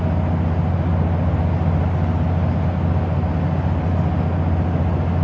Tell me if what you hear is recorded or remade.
recorded